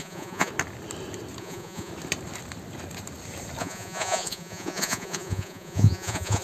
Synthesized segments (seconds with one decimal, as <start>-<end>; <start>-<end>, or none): 0.0-0.5; 1.4-1.9; 3.6-6.4